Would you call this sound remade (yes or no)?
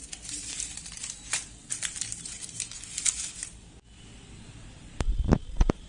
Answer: yes